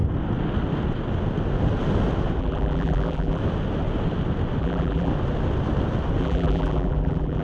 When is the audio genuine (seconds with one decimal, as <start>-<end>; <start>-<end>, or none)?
0.0-2.4; 3.4-4.6; 5.1-6.2

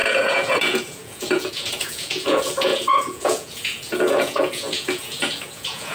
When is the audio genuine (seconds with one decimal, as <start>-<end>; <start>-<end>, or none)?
none

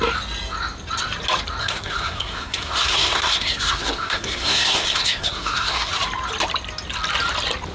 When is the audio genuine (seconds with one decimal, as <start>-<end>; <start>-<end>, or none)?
0.0-1.6; 5.9-7.7

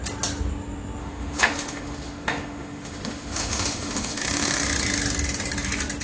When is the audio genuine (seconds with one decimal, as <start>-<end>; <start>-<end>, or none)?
0.0-1.0; 4.6-6.0